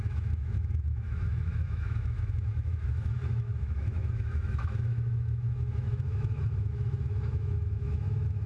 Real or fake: fake